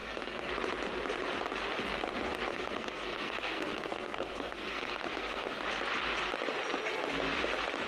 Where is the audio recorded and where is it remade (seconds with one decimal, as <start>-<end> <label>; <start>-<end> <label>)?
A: 0.0-0.5 remade; 0.5-2.5 recorded; 2.5-5.6 remade; 5.6-7.9 recorded